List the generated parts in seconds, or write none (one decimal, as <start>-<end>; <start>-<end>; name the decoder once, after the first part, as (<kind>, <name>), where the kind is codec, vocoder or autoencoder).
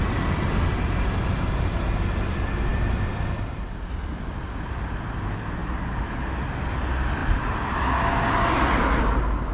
7.2-7.8 (vocoder, BigVGAN v2)